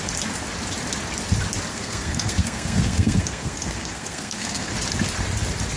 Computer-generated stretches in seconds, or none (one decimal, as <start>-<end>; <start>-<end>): 1.7-4.7